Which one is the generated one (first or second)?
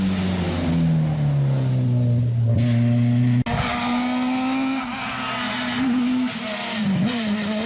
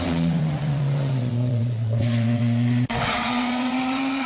second